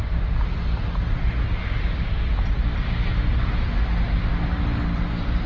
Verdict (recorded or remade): recorded